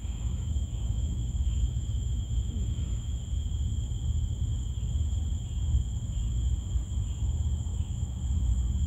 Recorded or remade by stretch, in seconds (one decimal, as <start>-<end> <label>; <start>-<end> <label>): 0.0-3.2 remade; 3.2-7.7 recorded; 7.7-8.2 remade; 8.2-8.9 recorded